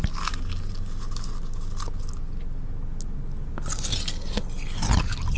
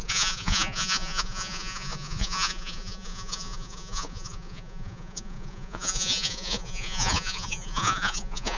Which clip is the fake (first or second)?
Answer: second